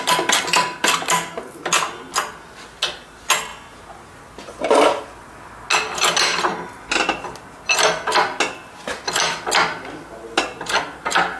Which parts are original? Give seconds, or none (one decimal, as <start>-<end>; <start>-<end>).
0.0-11.4